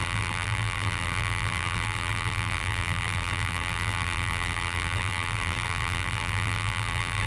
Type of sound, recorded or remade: remade